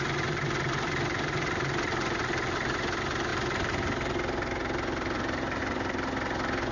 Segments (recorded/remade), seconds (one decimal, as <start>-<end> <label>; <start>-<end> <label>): 0.0-6.7 recorded